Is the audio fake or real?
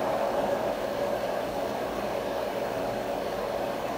fake